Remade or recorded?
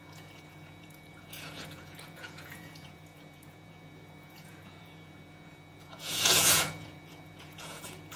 remade